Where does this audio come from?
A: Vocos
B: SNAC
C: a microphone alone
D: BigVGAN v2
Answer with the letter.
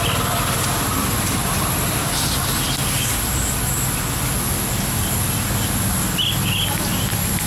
C